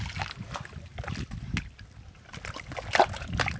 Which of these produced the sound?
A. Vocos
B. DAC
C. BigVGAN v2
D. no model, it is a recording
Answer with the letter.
D